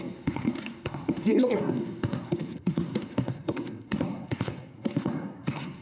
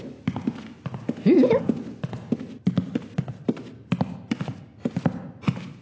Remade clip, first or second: first